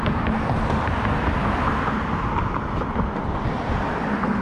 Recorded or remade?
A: recorded